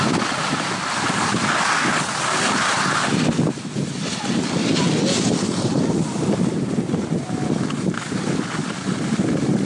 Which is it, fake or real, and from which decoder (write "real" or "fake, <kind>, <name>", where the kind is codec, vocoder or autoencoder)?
real